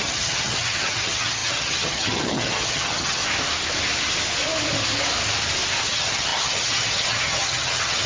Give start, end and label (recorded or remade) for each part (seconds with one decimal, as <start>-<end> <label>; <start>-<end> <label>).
0.0-3.2 remade; 3.2-5.8 recorded; 5.8-8.1 remade